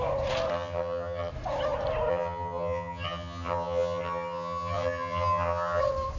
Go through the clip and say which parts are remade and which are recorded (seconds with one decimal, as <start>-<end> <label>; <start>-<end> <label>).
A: 0.0-0.5 recorded; 0.5-1.3 remade; 1.3-2.1 recorded; 2.1-5.8 remade; 5.8-6.2 recorded